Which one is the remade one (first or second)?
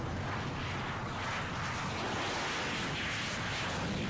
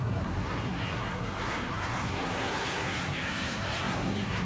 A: second